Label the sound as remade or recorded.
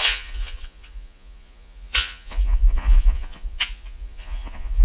remade